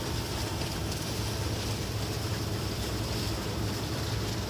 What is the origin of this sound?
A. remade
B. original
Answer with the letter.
A